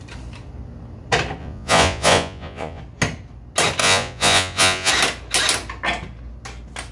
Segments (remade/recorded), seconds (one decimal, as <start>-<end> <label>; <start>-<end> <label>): 0.0-1.4 recorded; 1.4-2.8 remade; 2.8-3.8 recorded; 3.8-4.9 remade; 4.9-6.9 recorded